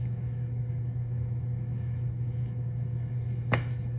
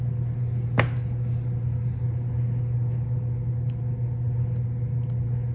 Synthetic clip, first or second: first